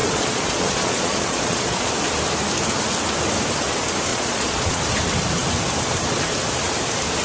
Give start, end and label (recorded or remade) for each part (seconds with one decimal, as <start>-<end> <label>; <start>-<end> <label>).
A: 0.0-1.9 remade; 1.9-4.1 recorded; 4.1-4.8 remade; 4.8-7.2 recorded